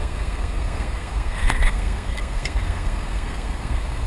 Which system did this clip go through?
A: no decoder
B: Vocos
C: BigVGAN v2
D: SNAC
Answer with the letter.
D